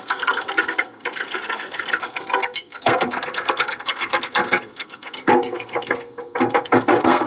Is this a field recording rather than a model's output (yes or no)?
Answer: no